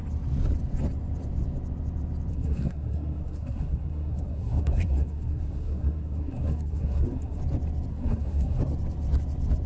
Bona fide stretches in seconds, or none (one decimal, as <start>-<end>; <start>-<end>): 0.0-2.3; 7.4-7.9; 8.6-9.7